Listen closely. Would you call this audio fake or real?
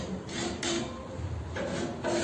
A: real